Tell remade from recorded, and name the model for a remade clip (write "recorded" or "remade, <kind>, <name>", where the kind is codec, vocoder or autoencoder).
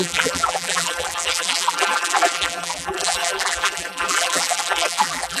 remade, vocoder, BigVGAN v2